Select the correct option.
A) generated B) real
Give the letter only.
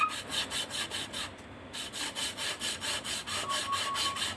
B